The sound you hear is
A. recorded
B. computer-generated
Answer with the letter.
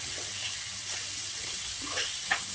B